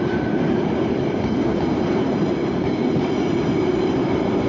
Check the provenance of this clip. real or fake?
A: fake